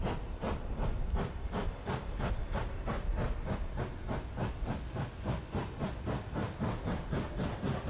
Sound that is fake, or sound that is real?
real